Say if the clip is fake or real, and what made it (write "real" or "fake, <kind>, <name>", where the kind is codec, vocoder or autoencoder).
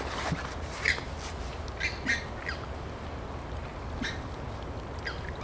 real